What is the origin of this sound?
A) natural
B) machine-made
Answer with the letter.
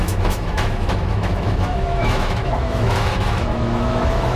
B